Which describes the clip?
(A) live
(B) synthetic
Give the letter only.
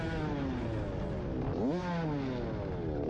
A